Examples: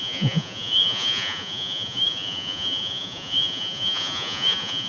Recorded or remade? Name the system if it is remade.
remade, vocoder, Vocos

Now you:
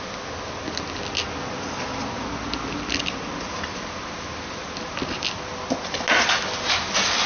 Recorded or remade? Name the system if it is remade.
recorded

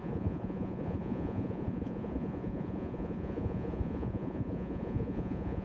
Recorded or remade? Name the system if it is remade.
remade, vocoder, Vocos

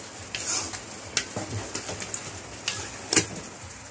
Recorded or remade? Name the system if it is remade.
recorded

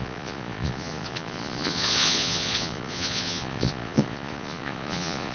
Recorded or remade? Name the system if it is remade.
remade, vocoder, Vocos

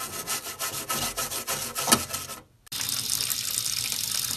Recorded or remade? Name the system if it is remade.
recorded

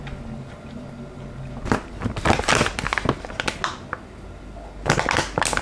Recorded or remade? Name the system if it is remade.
recorded